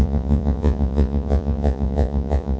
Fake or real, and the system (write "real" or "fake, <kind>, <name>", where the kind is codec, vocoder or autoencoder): fake, vocoder, Vocos